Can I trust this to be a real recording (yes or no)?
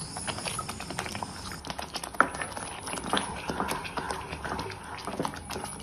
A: yes